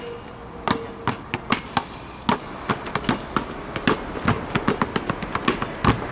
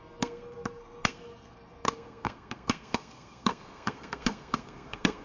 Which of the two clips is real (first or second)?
first